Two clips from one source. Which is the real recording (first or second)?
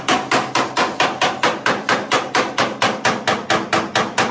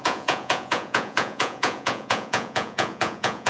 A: first